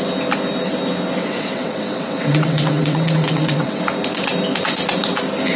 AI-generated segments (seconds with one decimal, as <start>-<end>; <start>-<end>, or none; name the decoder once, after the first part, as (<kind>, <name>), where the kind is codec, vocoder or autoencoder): 1.2-3.8 (vocoder, WaveNeXt)